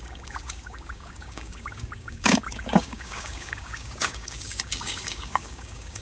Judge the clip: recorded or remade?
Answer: remade